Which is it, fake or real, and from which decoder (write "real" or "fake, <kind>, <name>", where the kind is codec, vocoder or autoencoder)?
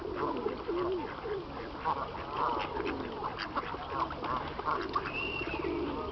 real